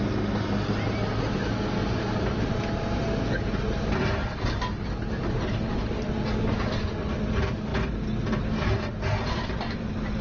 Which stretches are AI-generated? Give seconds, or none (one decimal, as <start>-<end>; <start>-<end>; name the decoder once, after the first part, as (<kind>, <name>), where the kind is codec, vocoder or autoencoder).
none